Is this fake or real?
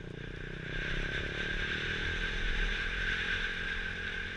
fake